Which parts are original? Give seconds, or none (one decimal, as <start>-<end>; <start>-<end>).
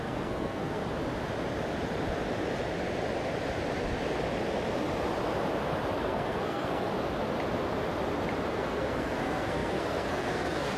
0.8-6.0; 6.9-8.5